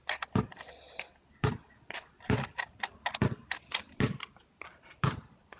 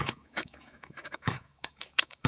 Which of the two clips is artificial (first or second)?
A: second